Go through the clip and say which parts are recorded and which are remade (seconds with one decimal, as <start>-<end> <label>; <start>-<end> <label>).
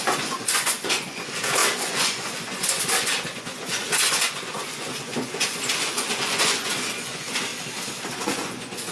0.0-7.5 remade; 7.5-8.1 recorded; 8.1-8.9 remade